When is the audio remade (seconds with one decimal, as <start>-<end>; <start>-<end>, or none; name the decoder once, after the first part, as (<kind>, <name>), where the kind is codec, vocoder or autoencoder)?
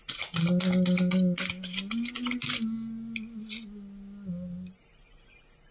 none